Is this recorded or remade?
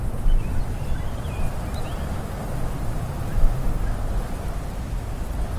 recorded